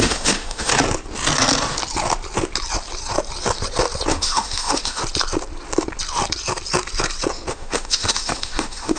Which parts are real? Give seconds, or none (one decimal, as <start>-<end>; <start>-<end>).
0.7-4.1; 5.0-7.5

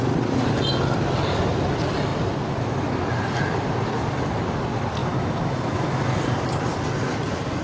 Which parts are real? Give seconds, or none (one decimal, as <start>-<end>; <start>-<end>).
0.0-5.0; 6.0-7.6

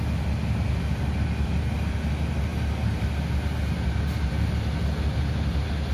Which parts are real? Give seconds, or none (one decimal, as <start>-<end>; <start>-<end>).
0.0-5.9

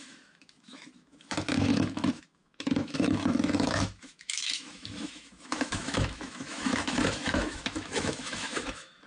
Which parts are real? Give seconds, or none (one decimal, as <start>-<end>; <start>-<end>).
none

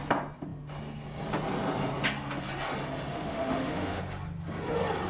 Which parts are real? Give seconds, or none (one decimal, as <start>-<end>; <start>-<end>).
0.0-3.1; 4.0-5.1

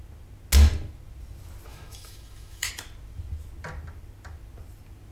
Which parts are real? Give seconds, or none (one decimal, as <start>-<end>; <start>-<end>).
0.0-1.7; 2.7-5.1

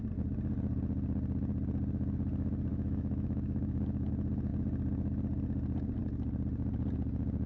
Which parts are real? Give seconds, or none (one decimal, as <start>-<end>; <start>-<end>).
0.0-2.7; 4.1-7.5

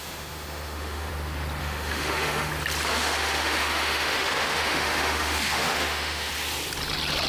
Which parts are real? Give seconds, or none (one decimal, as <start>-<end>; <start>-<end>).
1.1-1.6; 2.5-2.9; 6.3-7.3